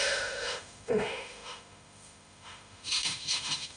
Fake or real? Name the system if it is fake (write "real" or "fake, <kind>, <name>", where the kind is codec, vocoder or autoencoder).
fake, autoencoder, DAC-VAE